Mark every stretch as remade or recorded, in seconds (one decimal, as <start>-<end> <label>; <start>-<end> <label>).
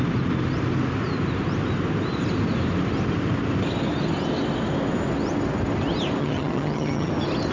0.0-6.2 recorded; 6.2-7.1 remade; 7.1-7.5 recorded